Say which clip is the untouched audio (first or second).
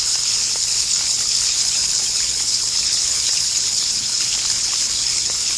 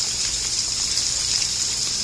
second